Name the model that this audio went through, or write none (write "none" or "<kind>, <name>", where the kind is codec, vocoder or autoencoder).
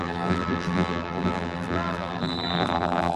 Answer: vocoder, BigVGAN v2